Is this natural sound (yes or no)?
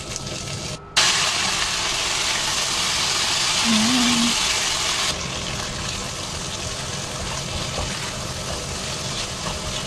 yes